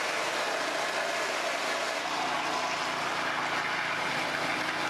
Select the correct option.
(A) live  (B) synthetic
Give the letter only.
A